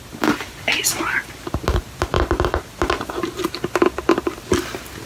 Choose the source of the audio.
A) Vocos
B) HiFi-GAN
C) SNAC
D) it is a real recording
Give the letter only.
D